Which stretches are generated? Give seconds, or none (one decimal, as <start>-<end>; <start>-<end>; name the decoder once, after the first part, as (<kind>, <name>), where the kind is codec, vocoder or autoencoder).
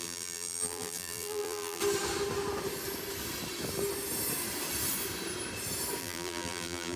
0.0-1.8 (vocoder, BigVGAN v2); 6.0-7.0